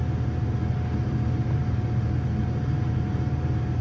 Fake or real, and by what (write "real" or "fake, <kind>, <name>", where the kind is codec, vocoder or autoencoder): real